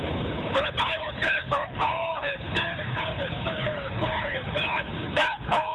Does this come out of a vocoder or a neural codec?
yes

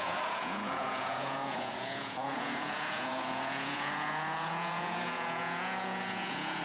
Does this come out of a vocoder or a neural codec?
yes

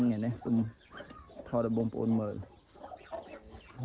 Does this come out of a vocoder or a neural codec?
no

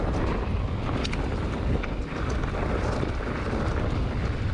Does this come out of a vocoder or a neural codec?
no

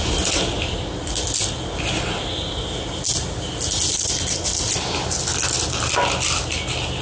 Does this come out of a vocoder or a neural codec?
no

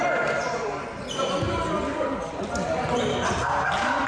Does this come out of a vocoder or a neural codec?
no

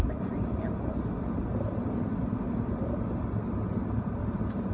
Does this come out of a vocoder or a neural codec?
no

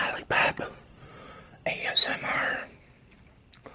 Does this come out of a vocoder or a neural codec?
no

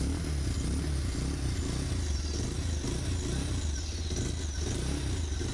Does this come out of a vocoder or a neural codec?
no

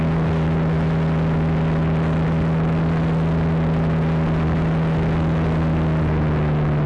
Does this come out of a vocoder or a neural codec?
no